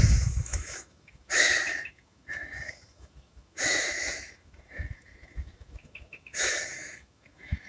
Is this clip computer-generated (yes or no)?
yes